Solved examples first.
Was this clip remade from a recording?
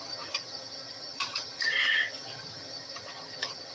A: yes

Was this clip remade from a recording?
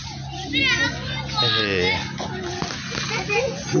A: no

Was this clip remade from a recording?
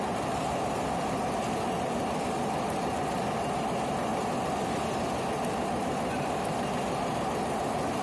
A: no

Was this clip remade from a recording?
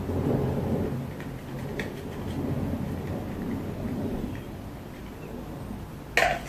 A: no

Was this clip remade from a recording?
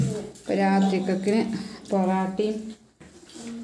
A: no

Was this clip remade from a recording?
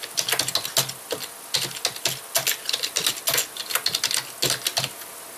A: no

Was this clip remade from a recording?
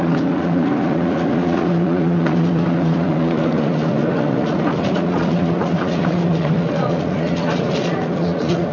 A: yes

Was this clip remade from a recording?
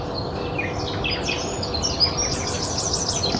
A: no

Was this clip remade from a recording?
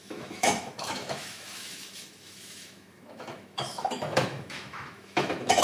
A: yes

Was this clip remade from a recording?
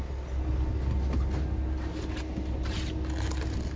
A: no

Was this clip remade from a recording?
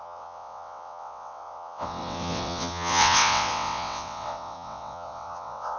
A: yes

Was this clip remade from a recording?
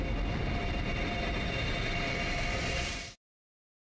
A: no